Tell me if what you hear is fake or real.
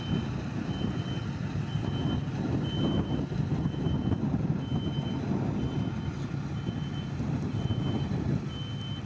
real